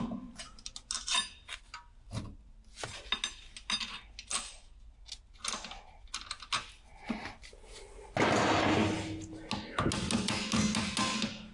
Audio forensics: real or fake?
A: real